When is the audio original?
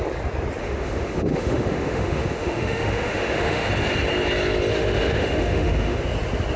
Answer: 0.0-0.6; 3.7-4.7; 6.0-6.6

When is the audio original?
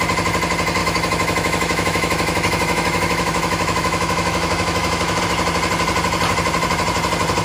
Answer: 0.0-0.8; 5.2-7.4